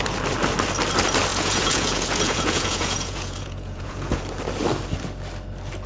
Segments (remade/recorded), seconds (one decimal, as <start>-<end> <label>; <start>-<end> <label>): 0.0-1.3 recorded; 1.3-4.2 remade; 4.2-5.9 recorded